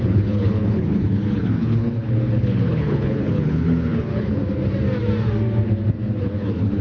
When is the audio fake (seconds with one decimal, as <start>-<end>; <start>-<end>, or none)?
0.0-4.4; 6.2-6.8